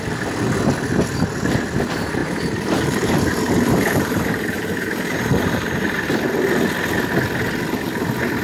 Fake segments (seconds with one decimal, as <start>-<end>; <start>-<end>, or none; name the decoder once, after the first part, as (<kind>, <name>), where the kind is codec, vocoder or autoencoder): 2.2-6.1 (vocoder, BigVGAN v2)